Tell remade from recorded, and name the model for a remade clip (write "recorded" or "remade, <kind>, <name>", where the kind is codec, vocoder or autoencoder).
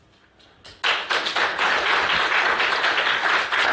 recorded